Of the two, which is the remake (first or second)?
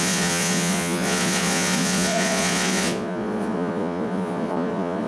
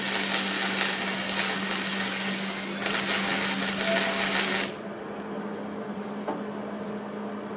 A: first